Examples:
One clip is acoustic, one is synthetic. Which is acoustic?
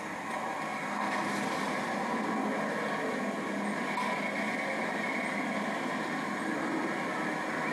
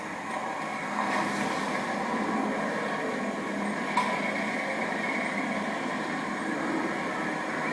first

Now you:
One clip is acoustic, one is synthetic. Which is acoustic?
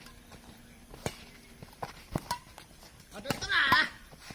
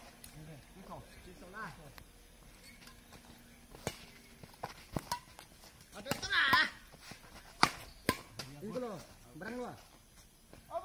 second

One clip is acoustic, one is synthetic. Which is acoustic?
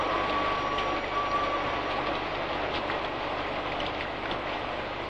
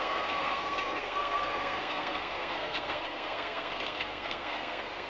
first